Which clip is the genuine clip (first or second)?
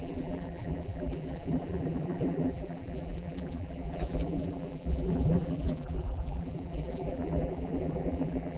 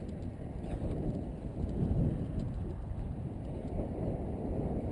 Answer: second